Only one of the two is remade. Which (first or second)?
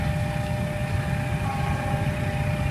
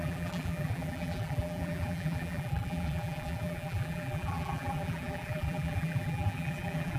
second